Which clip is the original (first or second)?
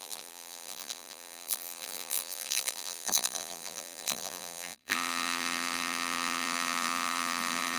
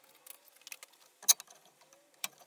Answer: second